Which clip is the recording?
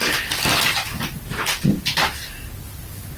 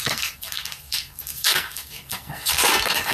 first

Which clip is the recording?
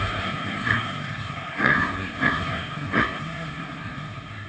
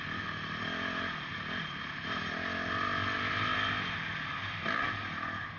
second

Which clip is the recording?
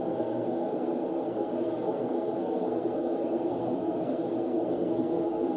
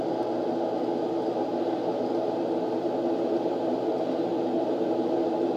second